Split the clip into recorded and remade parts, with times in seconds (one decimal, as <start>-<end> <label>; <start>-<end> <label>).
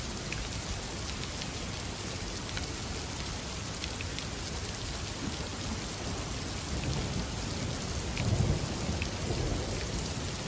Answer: 0.0-10.5 recorded